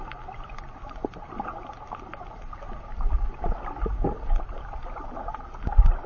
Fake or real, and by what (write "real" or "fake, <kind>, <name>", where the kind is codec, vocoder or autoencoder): real